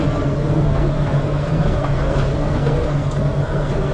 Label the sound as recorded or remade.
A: remade